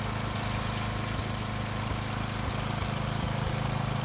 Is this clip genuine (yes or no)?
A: yes